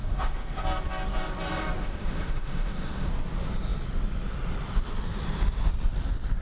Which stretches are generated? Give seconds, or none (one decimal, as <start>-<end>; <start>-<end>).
0.0-0.6; 1.8-3.1